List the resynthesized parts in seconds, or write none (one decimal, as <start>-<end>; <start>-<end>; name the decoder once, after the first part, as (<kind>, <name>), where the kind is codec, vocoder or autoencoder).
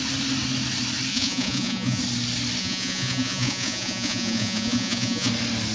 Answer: 1.1-2.0 (vocoder, Vocos); 2.6-5.3